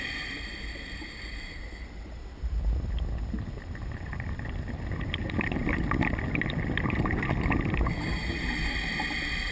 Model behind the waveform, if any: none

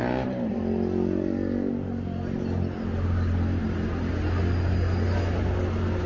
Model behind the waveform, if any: none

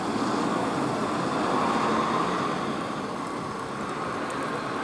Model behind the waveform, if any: none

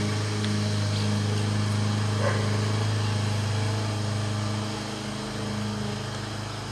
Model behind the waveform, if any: none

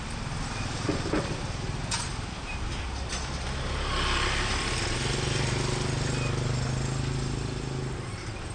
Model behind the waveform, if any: none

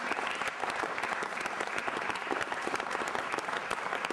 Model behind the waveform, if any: vocoder, BigVGAN v2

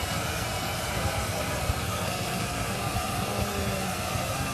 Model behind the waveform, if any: codec, SNAC